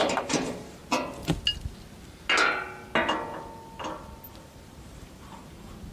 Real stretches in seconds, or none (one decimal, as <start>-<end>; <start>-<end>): 0.8-4.3